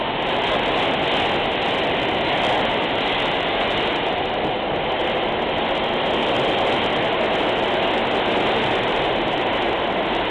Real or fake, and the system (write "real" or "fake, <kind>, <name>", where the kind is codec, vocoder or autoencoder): real